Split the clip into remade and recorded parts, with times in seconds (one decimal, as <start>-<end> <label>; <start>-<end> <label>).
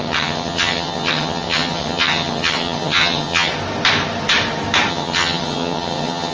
0.0-3.5 remade; 3.5-4.9 recorded; 4.9-6.3 remade